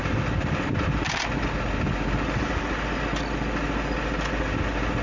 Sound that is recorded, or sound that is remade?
recorded